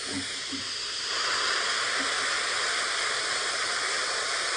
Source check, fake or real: real